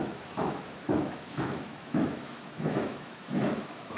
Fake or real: fake